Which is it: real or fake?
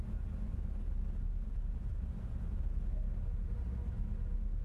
real